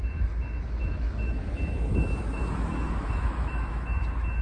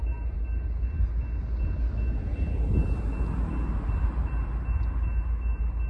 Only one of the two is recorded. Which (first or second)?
second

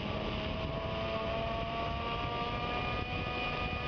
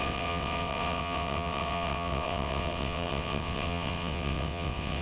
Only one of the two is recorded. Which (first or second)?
first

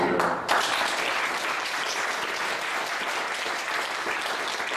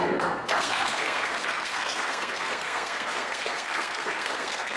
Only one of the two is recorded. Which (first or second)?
first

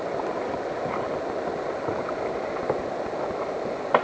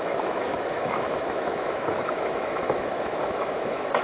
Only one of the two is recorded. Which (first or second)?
first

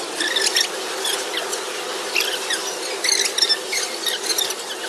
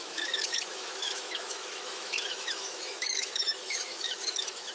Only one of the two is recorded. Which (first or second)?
first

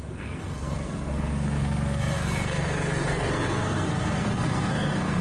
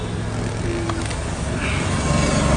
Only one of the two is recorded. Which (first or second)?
second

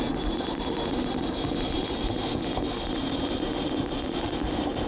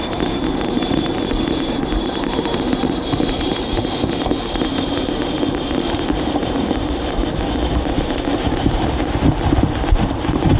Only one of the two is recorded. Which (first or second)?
first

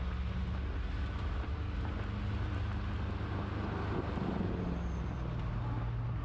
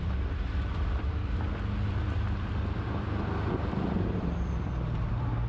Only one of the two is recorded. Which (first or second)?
first